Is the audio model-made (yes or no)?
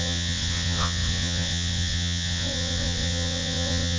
yes